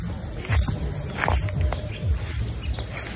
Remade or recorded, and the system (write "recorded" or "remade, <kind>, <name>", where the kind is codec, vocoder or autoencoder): recorded